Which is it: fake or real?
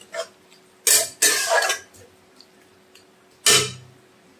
real